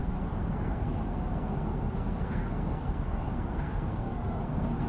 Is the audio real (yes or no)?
no